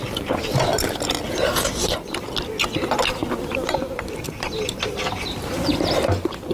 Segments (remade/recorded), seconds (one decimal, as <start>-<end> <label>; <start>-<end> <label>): 0.0-6.5 recorded